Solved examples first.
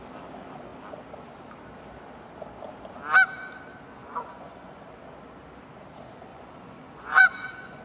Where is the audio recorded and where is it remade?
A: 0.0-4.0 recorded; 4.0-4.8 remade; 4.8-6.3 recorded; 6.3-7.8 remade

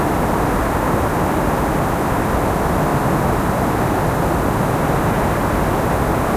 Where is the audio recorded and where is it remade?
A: 0.0-6.4 recorded

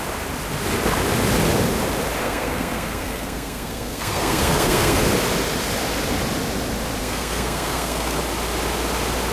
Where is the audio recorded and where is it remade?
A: 0.0-2.2 recorded; 2.2-5.0 remade; 5.0-7.0 recorded; 7.0-8.2 remade; 8.2-9.3 recorded

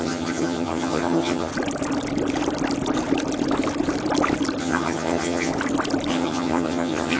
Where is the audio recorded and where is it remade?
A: 0.0-1.5 remade; 1.5-4.6 recorded; 4.6-5.5 remade; 5.5-6.1 recorded; 6.1-7.2 remade

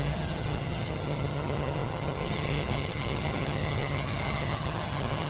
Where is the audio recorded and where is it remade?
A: 0.0-5.3 remade

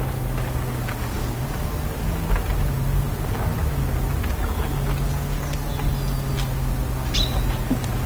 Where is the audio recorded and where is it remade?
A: 0.0-8.1 recorded

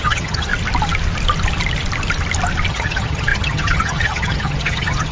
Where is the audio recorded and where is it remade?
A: 0.0-0.5 remade; 0.5-2.7 recorded; 2.7-5.1 remade

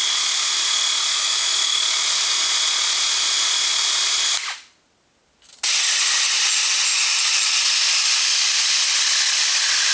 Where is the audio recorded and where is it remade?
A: 0.0-1.1 recorded; 1.1-1.8 remade; 1.8-9.9 recorded